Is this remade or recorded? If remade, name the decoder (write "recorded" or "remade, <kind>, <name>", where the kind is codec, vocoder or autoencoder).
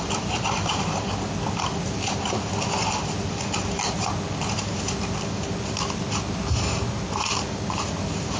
recorded